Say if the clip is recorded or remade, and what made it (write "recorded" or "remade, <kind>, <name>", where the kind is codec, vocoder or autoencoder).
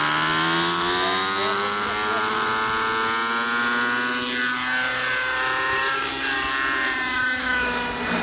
recorded